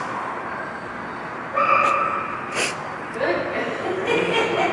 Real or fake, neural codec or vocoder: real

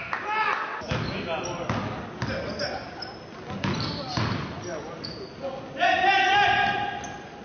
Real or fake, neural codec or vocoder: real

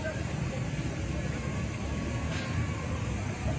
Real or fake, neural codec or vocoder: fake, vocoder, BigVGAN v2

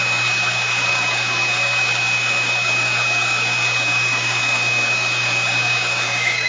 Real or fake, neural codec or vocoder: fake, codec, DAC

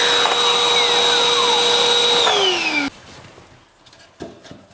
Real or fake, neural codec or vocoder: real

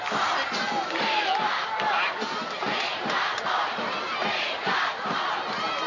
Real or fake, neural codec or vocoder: real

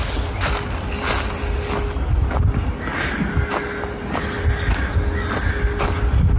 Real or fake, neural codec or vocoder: real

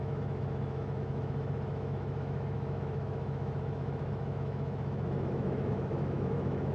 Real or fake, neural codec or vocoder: fake, autoencoder, DAC-VAE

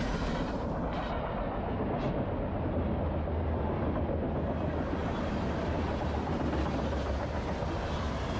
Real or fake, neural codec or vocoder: real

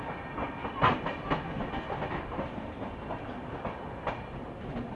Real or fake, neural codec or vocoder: real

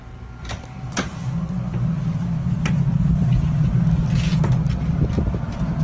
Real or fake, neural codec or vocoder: real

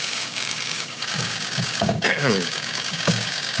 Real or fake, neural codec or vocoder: fake, codec, DAC